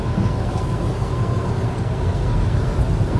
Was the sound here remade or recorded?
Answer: remade